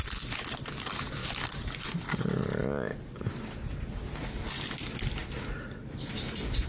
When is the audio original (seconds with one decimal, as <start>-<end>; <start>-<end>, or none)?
0.0-6.7